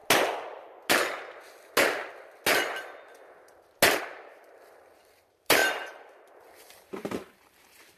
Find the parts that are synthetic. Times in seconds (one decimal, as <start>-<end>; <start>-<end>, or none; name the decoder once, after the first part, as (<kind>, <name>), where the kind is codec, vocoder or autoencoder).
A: 4.0-8.0 (vocoder, BigVGAN v2)